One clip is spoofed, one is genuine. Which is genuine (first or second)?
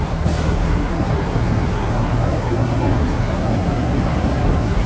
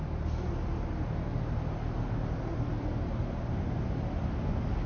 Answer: second